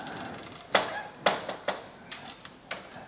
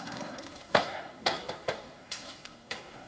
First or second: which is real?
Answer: first